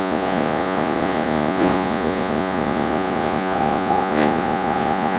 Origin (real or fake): fake